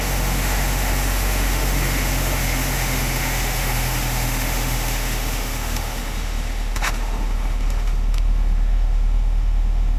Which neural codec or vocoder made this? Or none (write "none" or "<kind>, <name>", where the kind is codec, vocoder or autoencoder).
autoencoder, DAC-VAE